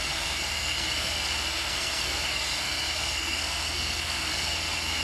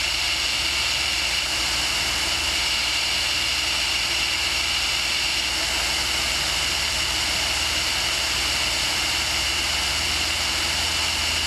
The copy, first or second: first